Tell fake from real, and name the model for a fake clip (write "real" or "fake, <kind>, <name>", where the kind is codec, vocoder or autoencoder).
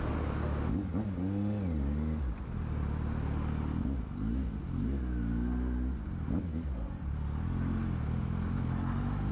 real